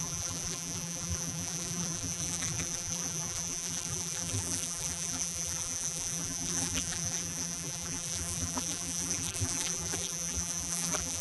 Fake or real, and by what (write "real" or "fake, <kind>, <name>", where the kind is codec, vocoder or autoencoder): fake, vocoder, BigVGAN v2